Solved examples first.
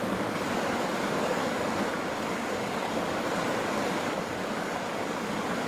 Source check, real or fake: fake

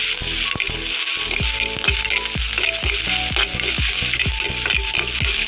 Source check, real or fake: real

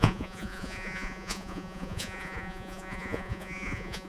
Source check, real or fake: fake